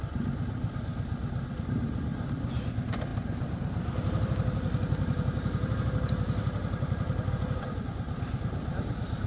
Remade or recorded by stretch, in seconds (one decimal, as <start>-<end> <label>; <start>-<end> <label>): 0.0-9.3 recorded